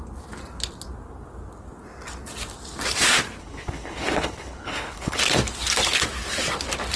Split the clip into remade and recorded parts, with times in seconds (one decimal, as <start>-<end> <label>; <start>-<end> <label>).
0.0-3.4 recorded; 3.4-5.2 remade; 5.2-7.0 recorded